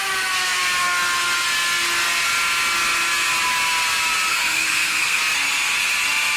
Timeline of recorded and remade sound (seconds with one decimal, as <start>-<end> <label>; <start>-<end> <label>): 0.0-4.3 recorded; 4.3-5.2 remade; 5.2-6.4 recorded